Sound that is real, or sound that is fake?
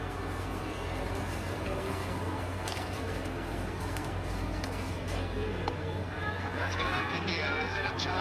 fake